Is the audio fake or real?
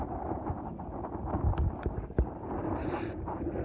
fake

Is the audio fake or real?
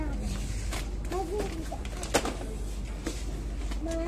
real